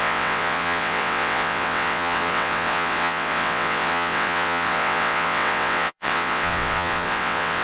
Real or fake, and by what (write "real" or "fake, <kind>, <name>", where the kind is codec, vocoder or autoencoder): fake, vocoder, WaveNeXt